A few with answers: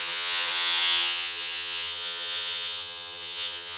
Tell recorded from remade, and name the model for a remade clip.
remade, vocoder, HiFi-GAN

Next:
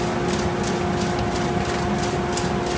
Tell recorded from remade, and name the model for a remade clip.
recorded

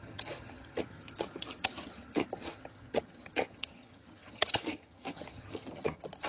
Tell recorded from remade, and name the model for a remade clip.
remade, vocoder, HiFi-GAN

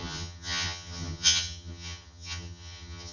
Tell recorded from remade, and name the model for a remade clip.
remade, vocoder, HiFi-GAN